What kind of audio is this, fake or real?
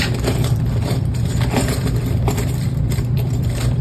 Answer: fake